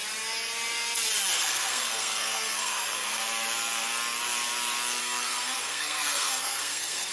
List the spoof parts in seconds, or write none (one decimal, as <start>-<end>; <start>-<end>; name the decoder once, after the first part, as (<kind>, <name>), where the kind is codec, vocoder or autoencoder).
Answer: 1.3-3.2 (codec, SNAC); 5.0-7.1